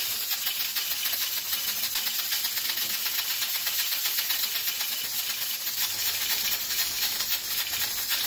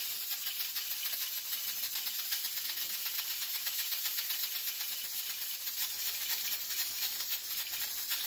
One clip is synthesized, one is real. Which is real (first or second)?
first